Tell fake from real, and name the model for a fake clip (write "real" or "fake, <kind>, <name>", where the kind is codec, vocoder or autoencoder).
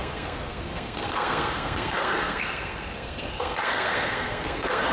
fake, codec, SNAC